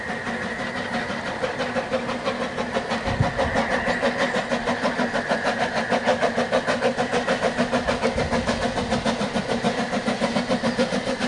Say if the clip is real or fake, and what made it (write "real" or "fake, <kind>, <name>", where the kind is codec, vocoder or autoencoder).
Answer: real